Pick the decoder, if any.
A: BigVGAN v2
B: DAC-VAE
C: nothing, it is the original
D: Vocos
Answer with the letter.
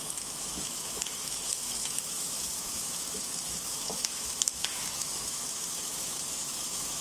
B